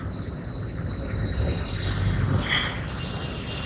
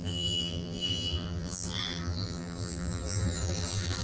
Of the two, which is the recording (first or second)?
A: first